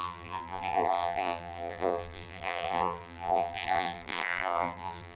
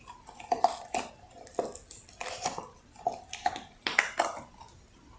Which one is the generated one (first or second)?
first